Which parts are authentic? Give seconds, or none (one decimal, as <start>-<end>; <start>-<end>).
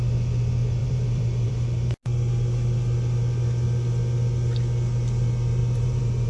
0.0-0.8; 1.5-5.6